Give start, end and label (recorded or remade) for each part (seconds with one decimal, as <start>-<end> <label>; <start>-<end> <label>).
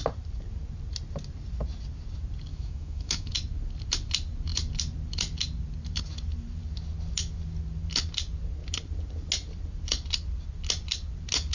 0.0-2.5 recorded; 2.5-3.3 remade; 3.3-11.5 recorded